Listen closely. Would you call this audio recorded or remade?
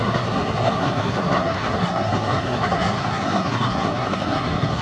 remade